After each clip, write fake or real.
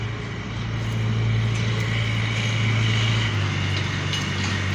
real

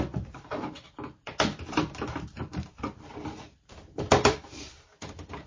fake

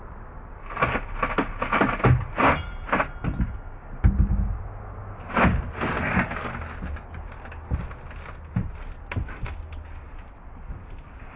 real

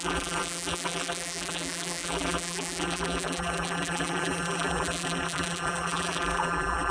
fake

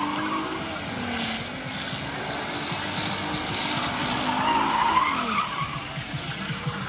real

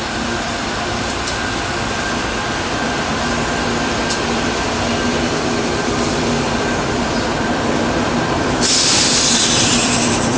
fake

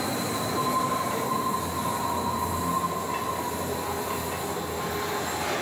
real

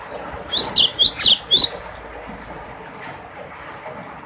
real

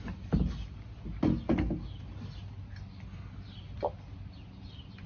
real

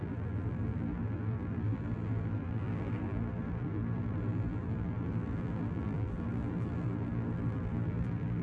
fake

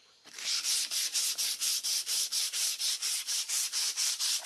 fake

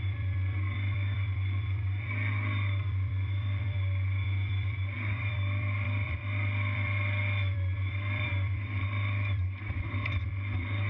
fake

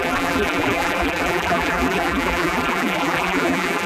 fake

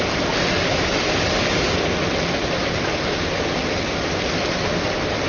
real